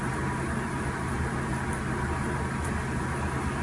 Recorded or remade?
recorded